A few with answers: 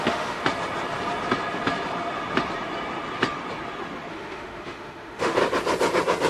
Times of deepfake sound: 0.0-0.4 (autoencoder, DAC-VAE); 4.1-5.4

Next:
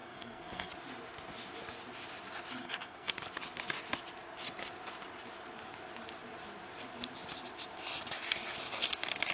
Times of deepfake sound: 0.0-0.7 (codec, SNAC); 2.6-3.1

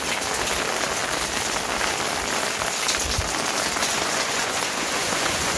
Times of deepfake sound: 3.8-5.6 (vocoder, Vocos)

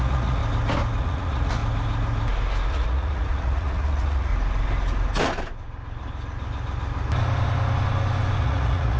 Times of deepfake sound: 0.0-0.4 (vocoder, Vocos); 1.0-1.6; 2.7-4.3; 8.4-9.0

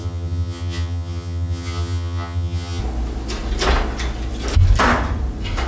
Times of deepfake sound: 0.0-2.8 (vocoder, HiFi-GAN)

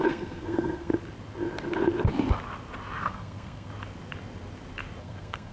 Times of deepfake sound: 0.0-0.9 (codec, SNAC); 3.0-3.7; 5.0-5.5